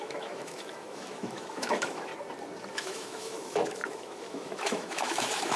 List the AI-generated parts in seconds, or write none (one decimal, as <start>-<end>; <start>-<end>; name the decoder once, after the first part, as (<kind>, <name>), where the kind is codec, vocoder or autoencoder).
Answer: 0.0-2.1 (autoencoder, DAC-VAE); 2.7-5.6